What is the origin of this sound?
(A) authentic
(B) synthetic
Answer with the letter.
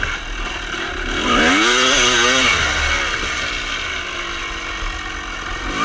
A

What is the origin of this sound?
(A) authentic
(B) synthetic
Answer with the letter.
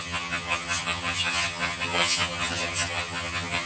B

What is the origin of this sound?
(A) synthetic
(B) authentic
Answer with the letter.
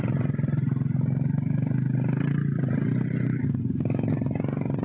B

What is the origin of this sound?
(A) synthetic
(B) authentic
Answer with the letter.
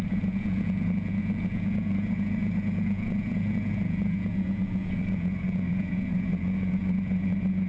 A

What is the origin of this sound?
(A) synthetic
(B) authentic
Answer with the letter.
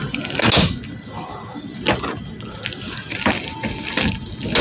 B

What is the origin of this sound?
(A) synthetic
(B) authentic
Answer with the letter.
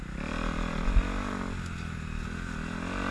B